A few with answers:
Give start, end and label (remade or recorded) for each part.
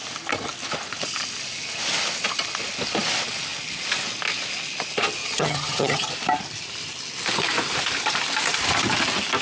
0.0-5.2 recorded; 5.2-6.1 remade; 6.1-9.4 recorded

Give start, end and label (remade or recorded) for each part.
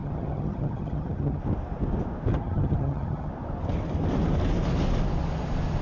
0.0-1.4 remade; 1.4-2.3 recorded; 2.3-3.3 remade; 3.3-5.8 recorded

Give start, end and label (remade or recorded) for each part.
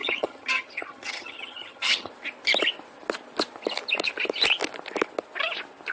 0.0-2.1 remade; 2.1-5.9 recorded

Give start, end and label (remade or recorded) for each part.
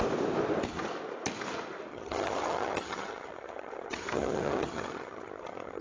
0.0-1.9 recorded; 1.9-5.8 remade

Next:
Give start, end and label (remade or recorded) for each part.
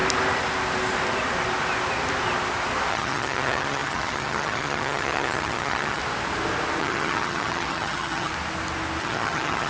0.0-2.9 recorded; 2.9-6.0 remade; 6.0-6.8 recorded; 6.8-8.3 remade; 8.3-9.0 recorded; 9.0-9.7 remade